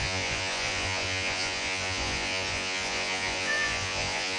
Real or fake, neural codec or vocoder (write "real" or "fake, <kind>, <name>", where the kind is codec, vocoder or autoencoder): fake, vocoder, Vocos